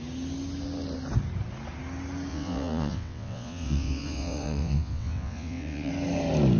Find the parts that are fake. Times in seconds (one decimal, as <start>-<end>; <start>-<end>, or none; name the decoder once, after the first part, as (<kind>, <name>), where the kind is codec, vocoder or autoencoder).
2.3-5.9 (vocoder, WaveNeXt)